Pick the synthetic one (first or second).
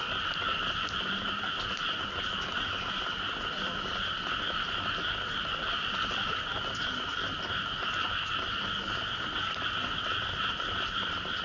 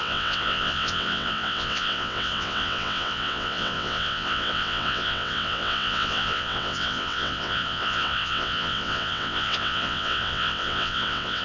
second